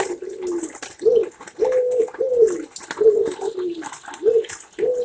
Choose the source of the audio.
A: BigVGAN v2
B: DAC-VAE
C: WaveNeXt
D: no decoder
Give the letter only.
D